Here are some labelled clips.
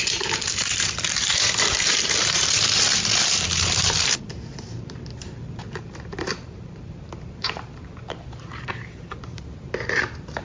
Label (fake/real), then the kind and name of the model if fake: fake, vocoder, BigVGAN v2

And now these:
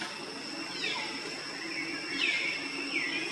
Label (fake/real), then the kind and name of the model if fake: real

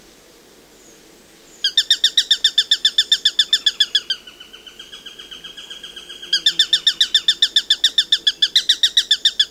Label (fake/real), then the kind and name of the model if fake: real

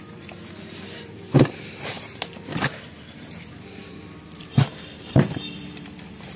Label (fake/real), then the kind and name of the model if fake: fake, vocoder, BigVGAN v2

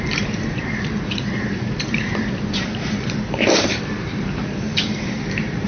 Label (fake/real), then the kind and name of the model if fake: fake, vocoder, BigVGAN v2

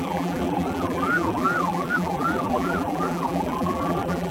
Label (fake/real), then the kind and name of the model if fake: fake, vocoder, BigVGAN v2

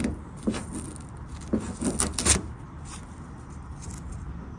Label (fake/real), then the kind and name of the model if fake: real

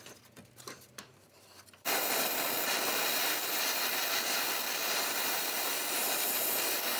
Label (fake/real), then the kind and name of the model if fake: fake, vocoder, BigVGAN v2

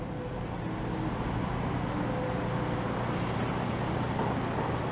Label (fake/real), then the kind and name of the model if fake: real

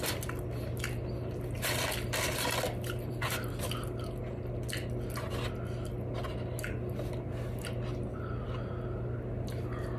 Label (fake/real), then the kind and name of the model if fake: real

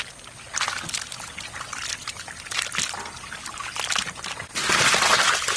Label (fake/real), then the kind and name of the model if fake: real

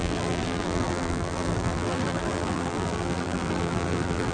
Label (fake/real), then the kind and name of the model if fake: fake, vocoder, BigVGAN v2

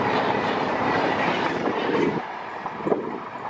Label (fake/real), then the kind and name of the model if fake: fake, vocoder, BigVGAN v2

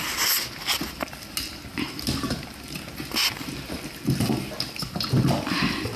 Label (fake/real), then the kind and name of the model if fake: real